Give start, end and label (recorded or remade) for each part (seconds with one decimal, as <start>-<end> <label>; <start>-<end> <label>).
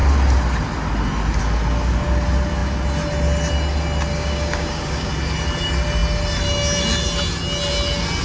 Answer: 0.0-4.1 recorded; 4.1-5.1 remade; 5.1-8.2 recorded